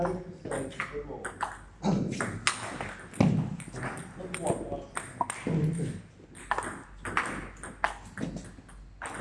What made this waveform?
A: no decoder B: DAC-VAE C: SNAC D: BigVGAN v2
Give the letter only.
A